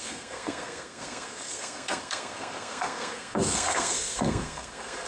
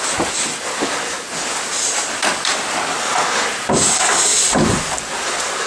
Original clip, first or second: second